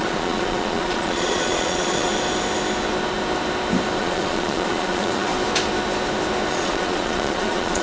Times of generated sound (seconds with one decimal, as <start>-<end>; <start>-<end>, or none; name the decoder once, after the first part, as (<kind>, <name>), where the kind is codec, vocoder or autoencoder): 0.0-2.1 (vocoder, Vocos); 4.0-5.3; 6.5-7.8